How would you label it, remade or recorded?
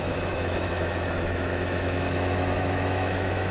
remade